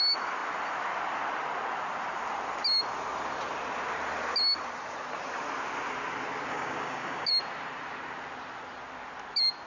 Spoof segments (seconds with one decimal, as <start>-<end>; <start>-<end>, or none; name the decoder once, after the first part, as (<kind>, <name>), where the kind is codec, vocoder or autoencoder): 6.5-7.3 (codec, DAC)